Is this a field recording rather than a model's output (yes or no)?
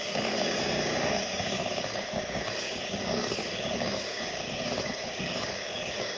no